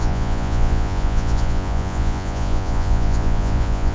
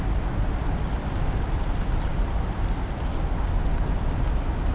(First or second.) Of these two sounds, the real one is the second